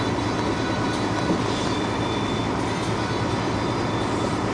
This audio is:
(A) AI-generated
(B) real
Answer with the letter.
B